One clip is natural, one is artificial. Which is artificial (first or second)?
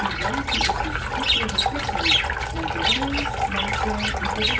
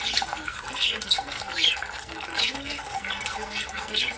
second